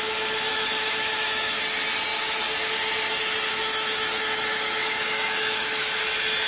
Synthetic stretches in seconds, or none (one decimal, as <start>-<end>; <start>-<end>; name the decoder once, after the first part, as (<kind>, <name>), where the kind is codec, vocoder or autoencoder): 0.5-1.6 (autoencoder, DAC-VAE); 3.5-6.0